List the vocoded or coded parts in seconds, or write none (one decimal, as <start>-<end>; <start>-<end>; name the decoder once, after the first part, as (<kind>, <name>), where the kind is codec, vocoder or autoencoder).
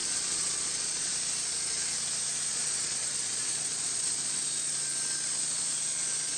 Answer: 0.0-1.1 (vocoder, Vocos); 2.5-4.4